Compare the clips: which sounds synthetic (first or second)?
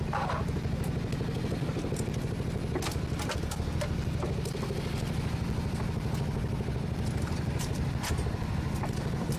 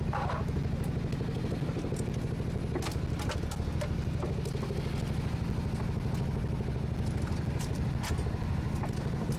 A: first